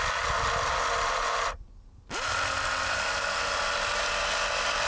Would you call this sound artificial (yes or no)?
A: no